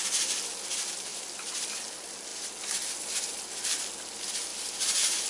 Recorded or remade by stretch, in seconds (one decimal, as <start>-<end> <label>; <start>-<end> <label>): 0.0-1.1 recorded; 1.1-1.7 remade; 1.7-4.5 recorded; 4.5-5.3 remade